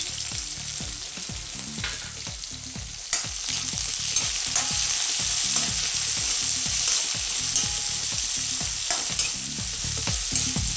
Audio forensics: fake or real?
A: real